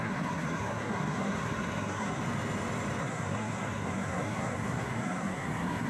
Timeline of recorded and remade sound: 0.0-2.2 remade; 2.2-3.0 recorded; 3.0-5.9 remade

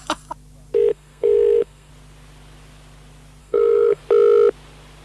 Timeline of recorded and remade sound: 0.0-0.9 recorded; 0.9-1.9 remade; 1.9-3.4 recorded; 3.4-4.0 remade; 4.0-5.0 recorded

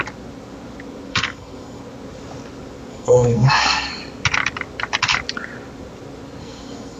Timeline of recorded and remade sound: 0.0-1.1 recorded; 1.1-1.8 remade; 1.8-2.9 recorded; 2.9-4.0 remade; 4.0-6.4 recorded; 6.4-7.0 remade

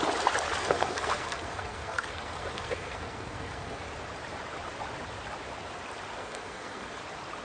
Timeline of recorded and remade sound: 0.0-0.6 recorded; 0.6-3.9 remade; 3.9-6.2 recorded; 6.2-7.0 remade; 7.0-7.4 recorded

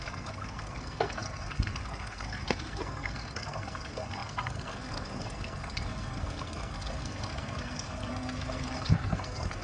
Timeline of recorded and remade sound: 0.0-9.6 remade

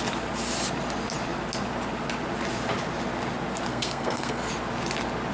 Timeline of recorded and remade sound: 0.0-3.7 recorded; 3.7-4.5 remade; 4.5-5.3 recorded

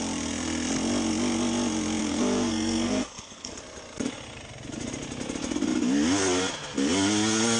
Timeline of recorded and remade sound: 0.0-2.0 recorded; 2.0-3.6 remade; 3.6-7.6 recorded